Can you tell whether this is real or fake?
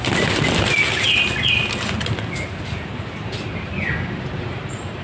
real